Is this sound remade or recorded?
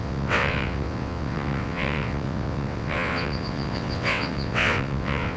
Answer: remade